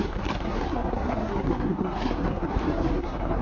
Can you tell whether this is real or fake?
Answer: fake